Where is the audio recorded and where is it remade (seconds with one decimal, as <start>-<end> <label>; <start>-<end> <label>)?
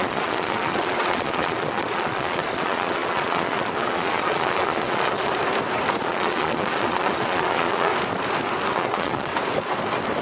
0.0-5.3 remade; 5.3-6.0 recorded; 6.0-7.9 remade; 7.9-8.7 recorded; 8.7-9.3 remade; 9.3-10.2 recorded